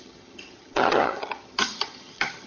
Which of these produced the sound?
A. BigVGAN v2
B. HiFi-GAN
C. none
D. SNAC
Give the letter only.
B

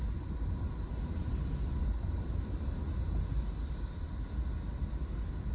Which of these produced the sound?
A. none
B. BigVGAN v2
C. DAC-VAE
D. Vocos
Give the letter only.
A